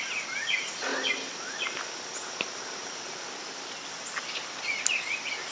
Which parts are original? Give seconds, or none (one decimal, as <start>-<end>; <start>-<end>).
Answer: 0.0-5.5